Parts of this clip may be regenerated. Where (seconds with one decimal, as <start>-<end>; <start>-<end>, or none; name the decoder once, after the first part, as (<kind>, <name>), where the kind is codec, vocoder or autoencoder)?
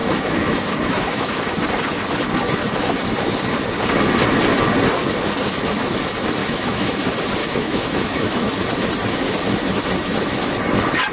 0.0-1.4 (autoencoder, DAC-VAE); 6.4-6.9; 7.4-8.5